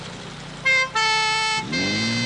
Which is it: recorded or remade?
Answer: recorded